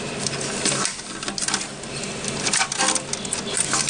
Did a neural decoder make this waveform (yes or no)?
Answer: no